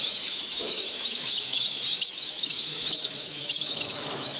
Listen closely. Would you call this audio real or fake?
fake